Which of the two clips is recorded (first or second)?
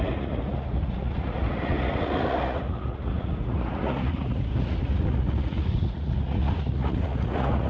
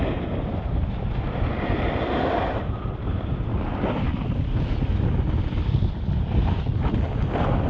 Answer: second